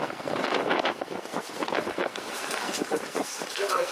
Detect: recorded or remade remade